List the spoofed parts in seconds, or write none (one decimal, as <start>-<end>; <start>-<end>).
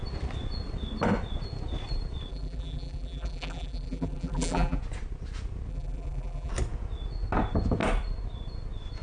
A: 2.3-4.8; 5.7-6.5